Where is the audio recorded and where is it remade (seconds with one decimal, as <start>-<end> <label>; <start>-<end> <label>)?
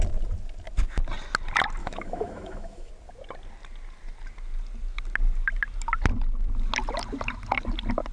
0.0-1.8 recorded; 1.8-2.9 remade; 2.9-8.1 recorded